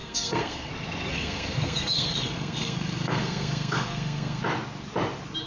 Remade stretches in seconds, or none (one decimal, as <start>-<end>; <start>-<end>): 0.0-0.7; 1.1-4.4